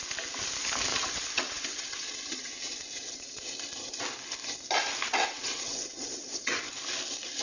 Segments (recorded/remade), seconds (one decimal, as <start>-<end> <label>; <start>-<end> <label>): 0.0-0.9 recorded; 0.9-3.5 remade; 3.5-5.1 recorded; 5.1-6.7 remade; 6.7-7.4 recorded